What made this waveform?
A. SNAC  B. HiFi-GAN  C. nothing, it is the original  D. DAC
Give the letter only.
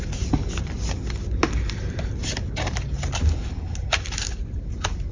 C